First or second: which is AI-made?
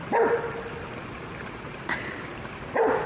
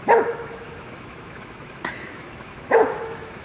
second